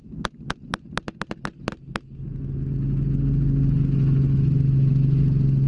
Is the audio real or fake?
real